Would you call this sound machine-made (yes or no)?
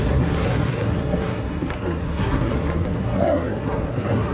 yes